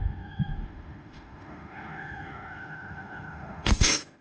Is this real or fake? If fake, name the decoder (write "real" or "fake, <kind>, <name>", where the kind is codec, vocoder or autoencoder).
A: fake, autoencoder, DAC-VAE